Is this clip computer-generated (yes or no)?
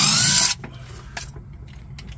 no